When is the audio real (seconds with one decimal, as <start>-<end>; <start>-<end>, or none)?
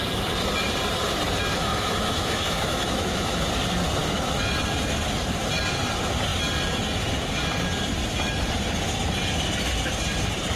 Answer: 0.0-1.5; 3.5-4.0; 4.5-10.6